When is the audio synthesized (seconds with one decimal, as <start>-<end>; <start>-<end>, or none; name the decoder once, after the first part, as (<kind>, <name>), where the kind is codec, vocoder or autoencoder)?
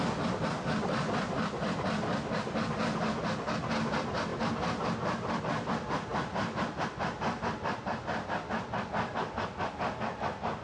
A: none